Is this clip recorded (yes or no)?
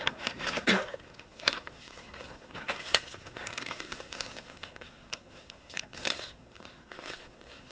no